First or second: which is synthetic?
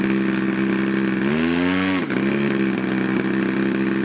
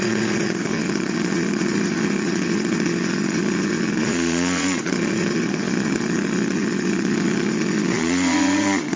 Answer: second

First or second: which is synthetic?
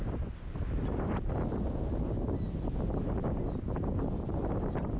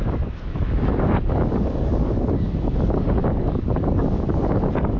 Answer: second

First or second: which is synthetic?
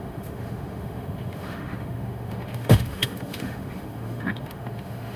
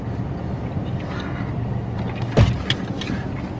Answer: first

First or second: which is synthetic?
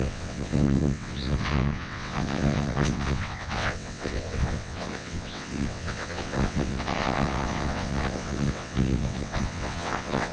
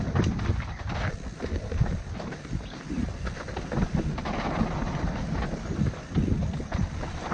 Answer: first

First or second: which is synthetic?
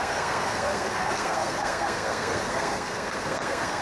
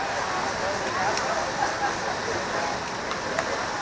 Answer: first